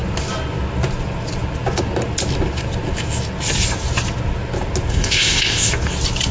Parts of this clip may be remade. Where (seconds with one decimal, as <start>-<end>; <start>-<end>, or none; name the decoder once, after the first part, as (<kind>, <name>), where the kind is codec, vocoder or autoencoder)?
4.9-5.7 (codec, ZipCodec)